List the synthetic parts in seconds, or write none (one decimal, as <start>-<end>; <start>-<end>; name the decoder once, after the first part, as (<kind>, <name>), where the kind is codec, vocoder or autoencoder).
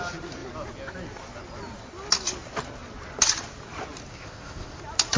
4.1-4.8 (codec, ZipCodec)